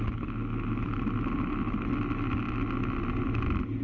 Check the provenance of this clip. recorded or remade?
recorded